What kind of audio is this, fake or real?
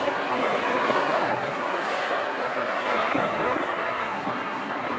fake